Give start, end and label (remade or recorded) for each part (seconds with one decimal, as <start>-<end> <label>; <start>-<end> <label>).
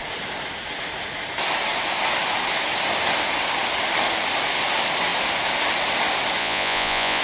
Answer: 0.0-6.4 recorded; 6.4-7.2 remade